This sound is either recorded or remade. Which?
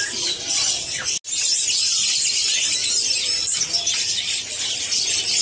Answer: recorded